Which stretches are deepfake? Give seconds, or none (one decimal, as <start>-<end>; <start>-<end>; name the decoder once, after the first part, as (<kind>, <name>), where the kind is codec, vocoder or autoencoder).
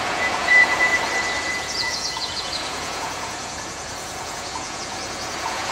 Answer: 0.0-0.9 (vocoder, Vocos); 1.4-5.7